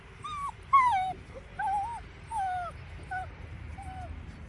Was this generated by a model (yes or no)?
no